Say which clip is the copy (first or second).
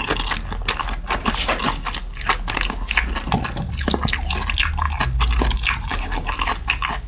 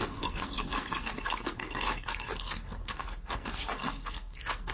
second